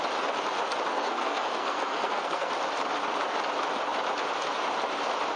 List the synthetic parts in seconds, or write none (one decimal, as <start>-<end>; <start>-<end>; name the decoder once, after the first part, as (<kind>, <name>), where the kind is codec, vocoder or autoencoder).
0.9-2.5 (codec, SNAC)